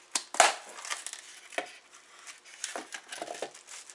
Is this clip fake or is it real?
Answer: real